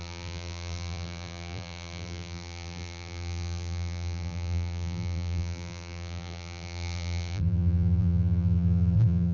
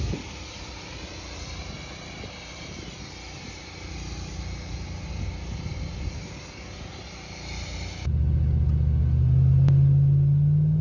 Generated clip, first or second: first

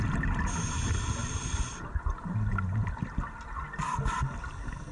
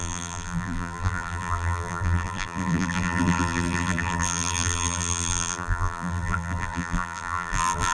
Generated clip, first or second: second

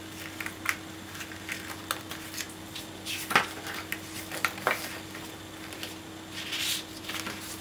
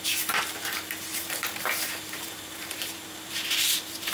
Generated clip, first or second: second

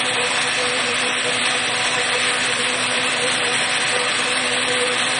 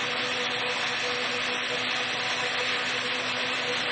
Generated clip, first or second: first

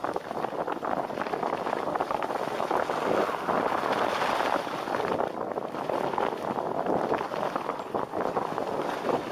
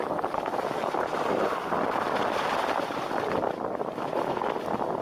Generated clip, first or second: second